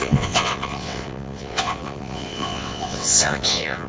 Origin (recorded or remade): remade